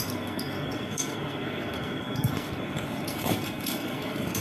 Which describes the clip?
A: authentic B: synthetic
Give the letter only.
B